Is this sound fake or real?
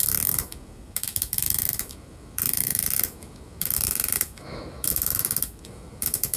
fake